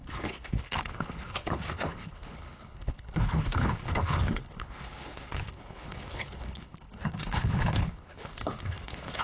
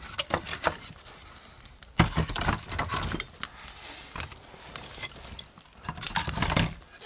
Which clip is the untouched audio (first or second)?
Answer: second